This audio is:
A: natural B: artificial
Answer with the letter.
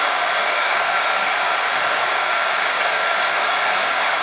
B